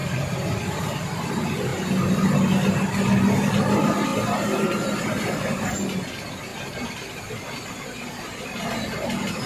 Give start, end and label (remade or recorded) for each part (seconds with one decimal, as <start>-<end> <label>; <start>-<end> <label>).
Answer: 0.0-1.0 remade; 1.0-6.5 recorded; 6.5-7.5 remade; 7.5-9.5 recorded